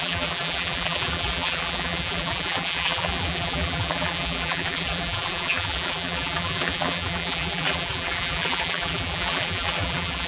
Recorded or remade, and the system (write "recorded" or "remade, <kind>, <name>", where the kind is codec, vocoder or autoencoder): remade, vocoder, BigVGAN v2